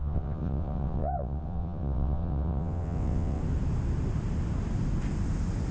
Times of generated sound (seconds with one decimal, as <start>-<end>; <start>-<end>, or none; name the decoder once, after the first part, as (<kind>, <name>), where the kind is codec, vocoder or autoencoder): 0.0-3.4 (vocoder, WaveNeXt)